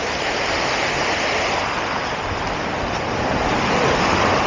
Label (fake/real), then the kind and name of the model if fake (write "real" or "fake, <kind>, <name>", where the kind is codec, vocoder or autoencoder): real